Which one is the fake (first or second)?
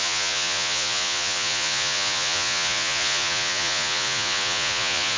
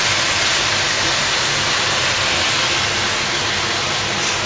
first